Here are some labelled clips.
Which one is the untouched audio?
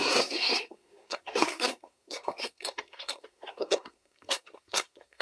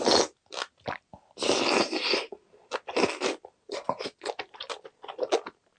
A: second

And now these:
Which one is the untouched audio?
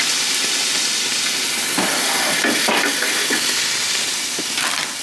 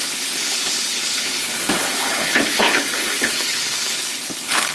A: first